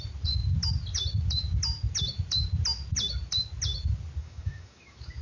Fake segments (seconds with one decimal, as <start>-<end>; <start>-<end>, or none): 4.2-5.2